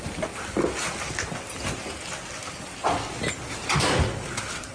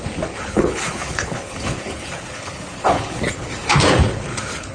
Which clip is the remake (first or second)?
second